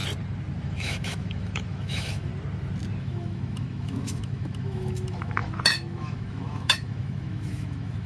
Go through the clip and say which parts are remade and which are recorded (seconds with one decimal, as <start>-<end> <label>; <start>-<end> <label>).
0.0-0.6 recorded; 0.6-2.3 remade; 2.3-3.0 recorded; 3.0-8.1 remade